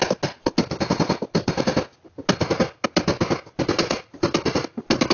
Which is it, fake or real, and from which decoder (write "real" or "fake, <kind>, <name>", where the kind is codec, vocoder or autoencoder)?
real